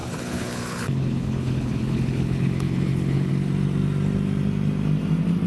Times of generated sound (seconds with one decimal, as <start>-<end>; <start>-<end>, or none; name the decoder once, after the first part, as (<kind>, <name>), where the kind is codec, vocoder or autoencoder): 0.0-3.3 (codec, HILCodec)